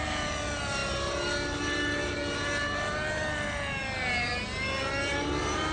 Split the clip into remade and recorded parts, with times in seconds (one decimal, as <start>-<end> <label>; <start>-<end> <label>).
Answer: 0.0-5.7 recorded